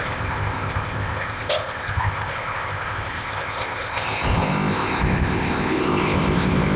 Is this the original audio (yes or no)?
no